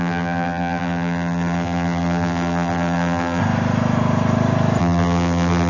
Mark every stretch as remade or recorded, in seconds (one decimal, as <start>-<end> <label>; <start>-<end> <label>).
0.0-3.4 remade; 3.4-4.8 recorded; 4.8-5.7 remade